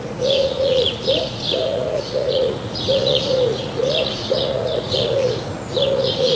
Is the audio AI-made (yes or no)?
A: yes